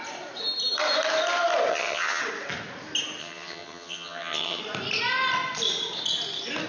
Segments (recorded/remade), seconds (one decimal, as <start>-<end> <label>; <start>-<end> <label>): 0.0-1.7 recorded; 1.7-2.2 remade; 2.2-3.2 recorded; 3.2-4.6 remade; 4.6-6.7 recorded